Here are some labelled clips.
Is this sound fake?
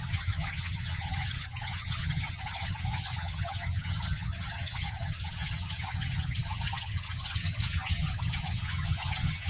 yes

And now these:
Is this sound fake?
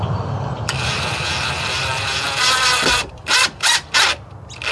yes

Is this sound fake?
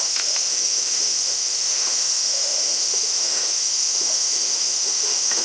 yes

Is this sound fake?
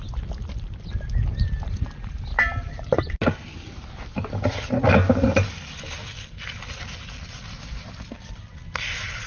no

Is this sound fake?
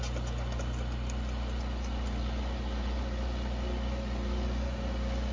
no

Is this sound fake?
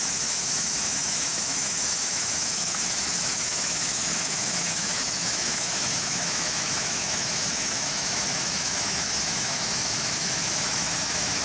yes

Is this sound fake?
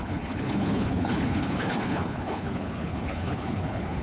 yes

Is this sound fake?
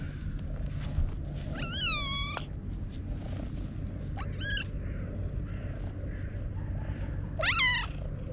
no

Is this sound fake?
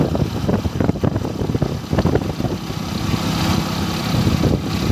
no